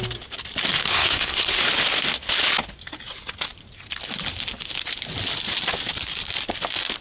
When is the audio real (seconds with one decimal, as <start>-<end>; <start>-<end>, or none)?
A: 0.0-0.9; 1.6-7.0